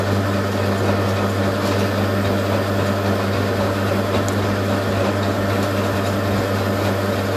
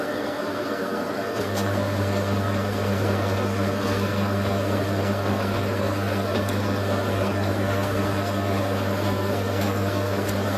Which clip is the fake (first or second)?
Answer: second